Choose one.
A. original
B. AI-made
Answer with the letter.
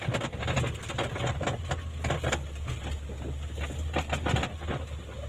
A